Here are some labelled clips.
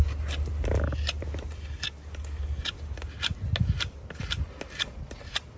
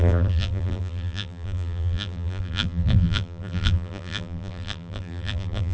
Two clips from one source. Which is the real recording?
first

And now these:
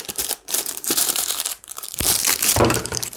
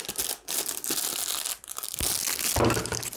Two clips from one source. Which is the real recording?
second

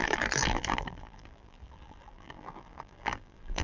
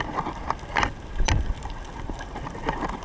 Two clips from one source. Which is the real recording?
second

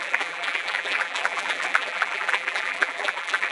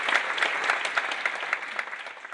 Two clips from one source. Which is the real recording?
second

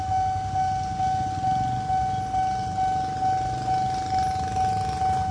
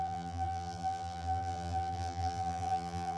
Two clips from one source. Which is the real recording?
first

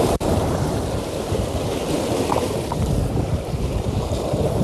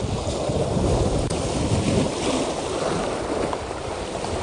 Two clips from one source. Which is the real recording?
second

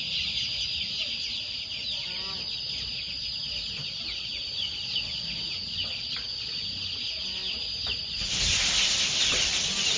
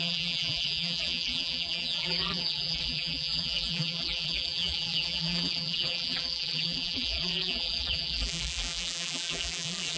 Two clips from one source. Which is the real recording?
first